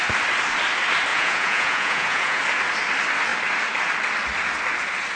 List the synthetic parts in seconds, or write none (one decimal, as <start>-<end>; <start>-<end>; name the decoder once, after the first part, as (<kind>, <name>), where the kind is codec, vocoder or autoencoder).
1.1-2.4 (vocoder, Vocos)